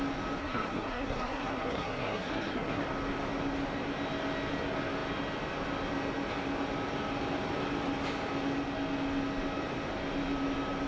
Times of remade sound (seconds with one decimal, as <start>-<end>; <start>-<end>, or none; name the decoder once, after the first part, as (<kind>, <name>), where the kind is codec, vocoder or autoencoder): 0.4-2.8 (codec, SNAC)